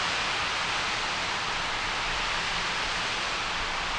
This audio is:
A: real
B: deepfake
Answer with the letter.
A